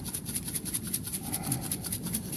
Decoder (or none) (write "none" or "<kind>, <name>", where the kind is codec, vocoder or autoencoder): vocoder, BigVGAN v2